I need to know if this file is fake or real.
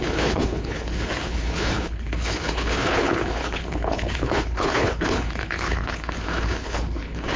fake